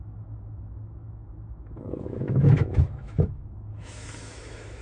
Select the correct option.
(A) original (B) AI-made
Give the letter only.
B